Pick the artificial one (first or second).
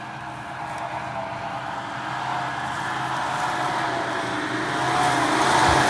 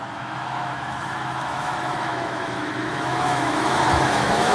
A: second